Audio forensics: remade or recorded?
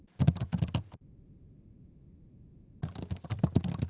recorded